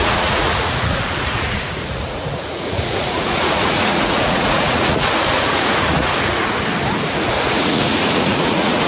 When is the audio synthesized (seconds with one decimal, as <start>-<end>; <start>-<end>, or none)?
0.0-6.4; 6.9-8.9